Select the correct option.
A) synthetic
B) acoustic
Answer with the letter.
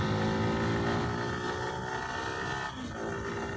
B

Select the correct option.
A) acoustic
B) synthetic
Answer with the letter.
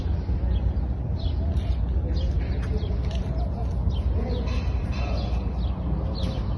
A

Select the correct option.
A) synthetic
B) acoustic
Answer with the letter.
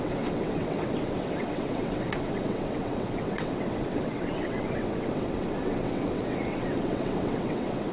A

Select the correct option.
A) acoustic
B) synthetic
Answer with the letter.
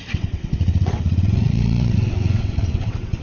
B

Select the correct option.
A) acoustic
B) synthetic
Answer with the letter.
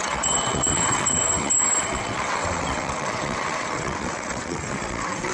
B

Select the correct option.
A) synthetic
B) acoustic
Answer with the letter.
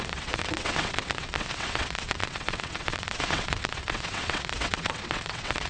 A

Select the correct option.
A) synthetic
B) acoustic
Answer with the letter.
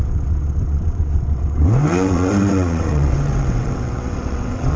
A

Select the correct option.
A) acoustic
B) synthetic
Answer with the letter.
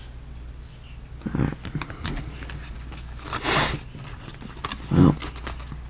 A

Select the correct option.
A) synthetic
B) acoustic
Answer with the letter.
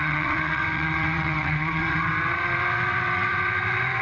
A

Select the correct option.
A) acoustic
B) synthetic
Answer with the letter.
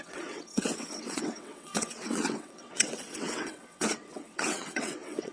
B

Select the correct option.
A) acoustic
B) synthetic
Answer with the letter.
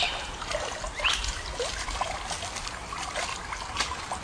A